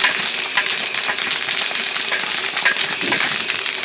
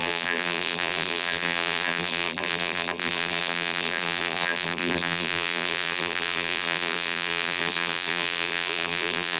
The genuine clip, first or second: first